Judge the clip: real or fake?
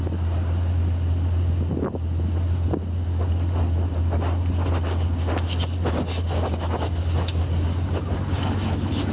real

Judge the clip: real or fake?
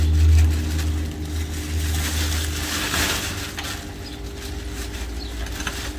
real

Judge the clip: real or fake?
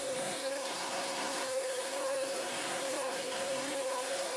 fake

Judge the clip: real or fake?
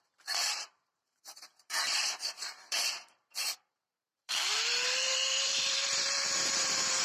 fake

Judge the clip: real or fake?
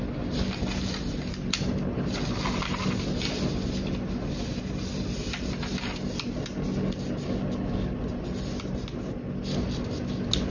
real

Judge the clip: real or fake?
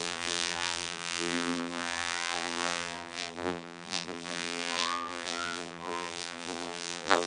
fake